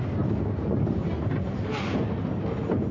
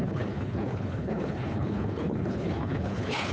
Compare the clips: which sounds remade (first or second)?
second